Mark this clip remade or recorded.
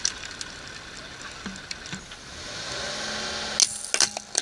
recorded